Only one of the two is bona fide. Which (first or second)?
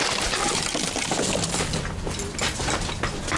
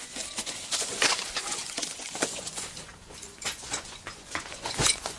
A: first